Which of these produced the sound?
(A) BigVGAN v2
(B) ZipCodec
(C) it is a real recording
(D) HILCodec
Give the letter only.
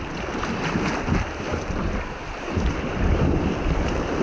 C